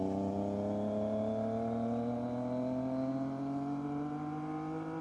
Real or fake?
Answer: real